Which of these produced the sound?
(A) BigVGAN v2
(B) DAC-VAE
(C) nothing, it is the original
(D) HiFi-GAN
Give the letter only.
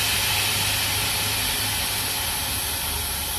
C